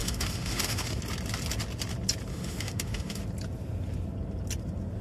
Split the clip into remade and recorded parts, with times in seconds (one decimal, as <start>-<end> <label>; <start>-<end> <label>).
0.0-1.0 remade; 1.0-2.3 recorded; 2.3-3.2 remade; 3.2-5.0 recorded